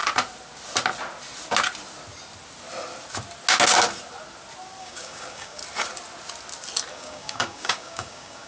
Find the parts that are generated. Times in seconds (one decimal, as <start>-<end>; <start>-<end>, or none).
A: 4.8-5.6; 6.9-8.5